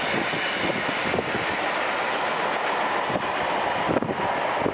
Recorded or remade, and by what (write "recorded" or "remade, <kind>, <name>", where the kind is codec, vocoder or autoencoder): recorded